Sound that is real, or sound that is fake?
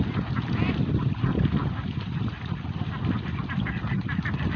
real